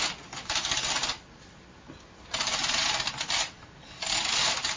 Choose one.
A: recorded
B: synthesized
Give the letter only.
A